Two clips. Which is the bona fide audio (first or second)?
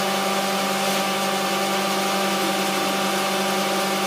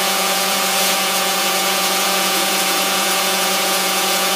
first